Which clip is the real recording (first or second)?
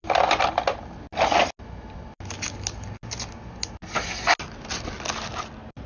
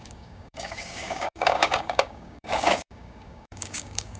first